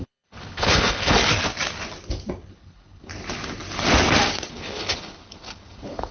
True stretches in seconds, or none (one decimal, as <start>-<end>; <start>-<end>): 1.2-2.5; 3.1-4.5